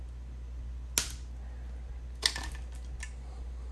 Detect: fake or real real